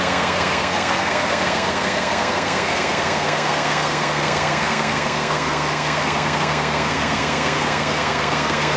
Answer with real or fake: fake